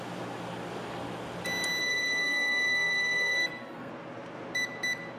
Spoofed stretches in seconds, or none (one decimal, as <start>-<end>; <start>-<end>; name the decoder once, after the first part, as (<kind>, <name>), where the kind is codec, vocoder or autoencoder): 1.8-3.9 (codec, SNAC)